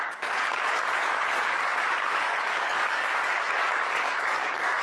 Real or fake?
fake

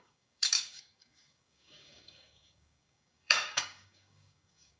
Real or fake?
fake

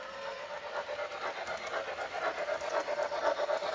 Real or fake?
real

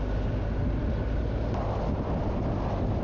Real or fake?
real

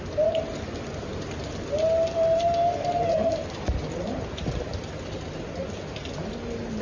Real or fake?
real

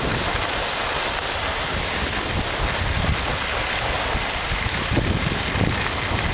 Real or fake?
real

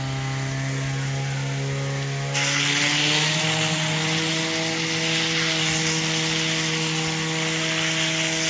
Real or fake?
real